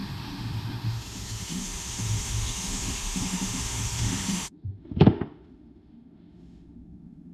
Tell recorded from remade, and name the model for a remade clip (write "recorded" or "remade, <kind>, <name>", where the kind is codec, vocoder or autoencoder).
remade, autoencoder, DAC-VAE